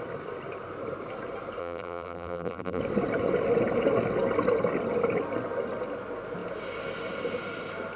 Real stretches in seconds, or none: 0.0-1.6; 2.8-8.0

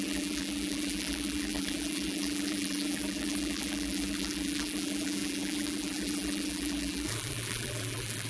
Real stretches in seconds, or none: none

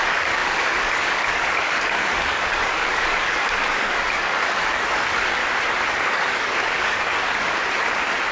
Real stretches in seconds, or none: 5.4-5.9; 7.6-8.3